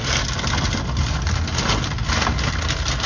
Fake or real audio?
real